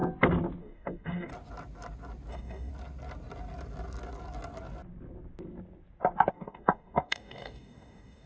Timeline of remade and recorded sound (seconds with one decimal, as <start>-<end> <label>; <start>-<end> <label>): 0.0-0.6 recorded; 0.6-1.3 remade; 1.3-2.3 recorded; 2.3-2.7 remade; 2.7-6.3 recorded; 6.3-8.3 remade